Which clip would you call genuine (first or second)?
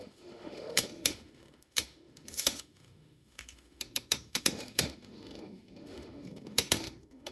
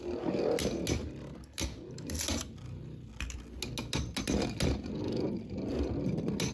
second